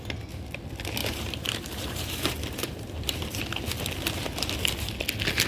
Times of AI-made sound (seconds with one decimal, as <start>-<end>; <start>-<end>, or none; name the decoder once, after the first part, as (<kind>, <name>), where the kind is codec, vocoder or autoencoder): 1.0-3.4 (vocoder, BigVGAN v2)